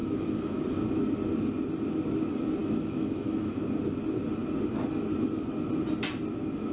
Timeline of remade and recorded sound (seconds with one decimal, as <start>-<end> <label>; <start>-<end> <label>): 0.0-0.6 remade; 0.6-2.6 recorded; 2.6-3.6 remade; 3.6-6.7 recorded